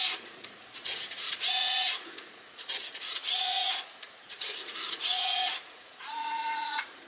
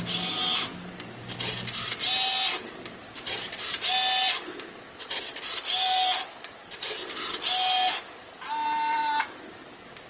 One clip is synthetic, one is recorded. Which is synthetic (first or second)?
first